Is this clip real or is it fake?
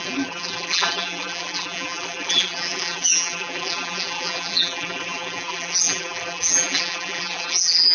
fake